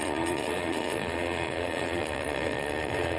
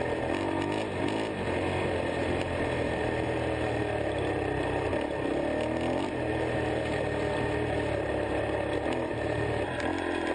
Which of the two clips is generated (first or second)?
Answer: first